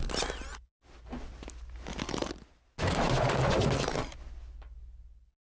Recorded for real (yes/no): yes